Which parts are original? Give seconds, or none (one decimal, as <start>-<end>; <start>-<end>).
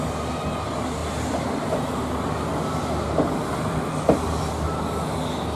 0.0-1.0; 4.4-5.6